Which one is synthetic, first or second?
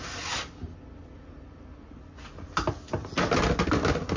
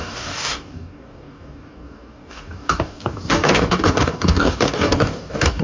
second